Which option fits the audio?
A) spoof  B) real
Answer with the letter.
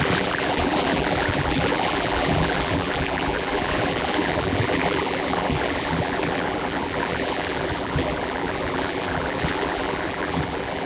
A